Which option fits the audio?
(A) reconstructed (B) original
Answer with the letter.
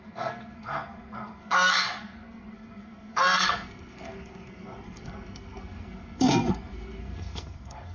A